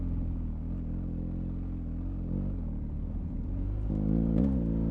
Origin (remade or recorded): recorded